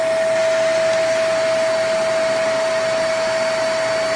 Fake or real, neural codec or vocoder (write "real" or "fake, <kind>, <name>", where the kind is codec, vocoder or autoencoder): real